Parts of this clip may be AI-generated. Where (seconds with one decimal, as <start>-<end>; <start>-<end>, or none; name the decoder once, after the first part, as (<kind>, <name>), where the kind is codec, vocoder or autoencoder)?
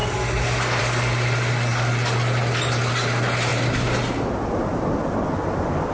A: none